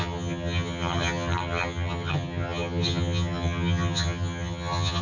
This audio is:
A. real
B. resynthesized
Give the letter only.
B